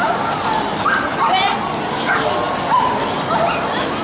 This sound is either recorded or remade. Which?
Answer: recorded